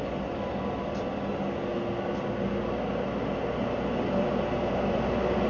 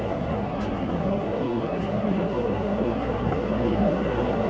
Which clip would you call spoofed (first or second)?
second